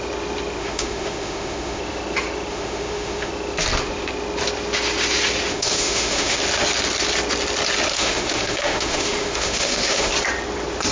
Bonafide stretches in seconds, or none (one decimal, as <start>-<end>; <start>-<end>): 0.0-0.6; 1.8-2.5; 3.3-5.5; 6.4-7.9; 10.1-10.9